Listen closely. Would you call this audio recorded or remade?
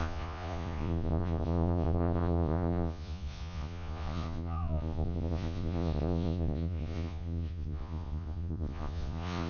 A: remade